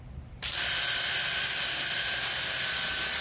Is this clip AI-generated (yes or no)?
yes